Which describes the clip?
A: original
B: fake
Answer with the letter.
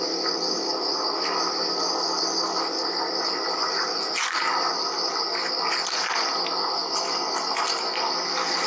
A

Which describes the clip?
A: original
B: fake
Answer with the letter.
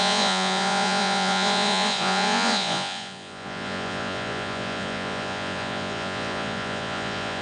B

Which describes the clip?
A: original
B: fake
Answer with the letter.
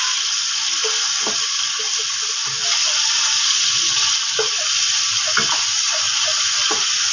A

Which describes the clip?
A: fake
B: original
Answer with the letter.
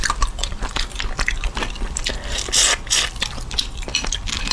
A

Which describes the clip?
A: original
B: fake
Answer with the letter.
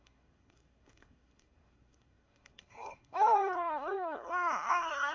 B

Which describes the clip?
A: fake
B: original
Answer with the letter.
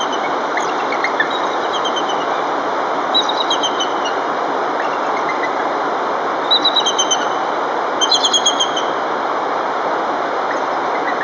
B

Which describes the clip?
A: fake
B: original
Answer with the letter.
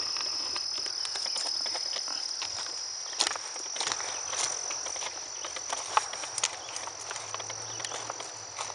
B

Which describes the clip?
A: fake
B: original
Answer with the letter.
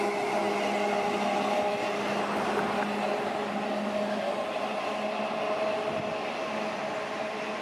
B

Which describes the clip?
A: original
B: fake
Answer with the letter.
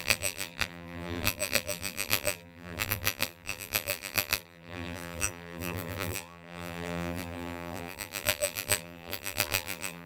B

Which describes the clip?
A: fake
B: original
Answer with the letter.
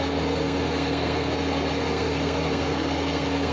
A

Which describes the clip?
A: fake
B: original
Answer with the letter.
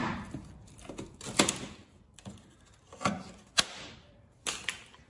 B